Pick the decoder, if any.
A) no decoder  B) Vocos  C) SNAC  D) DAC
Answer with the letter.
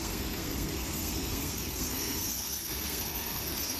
C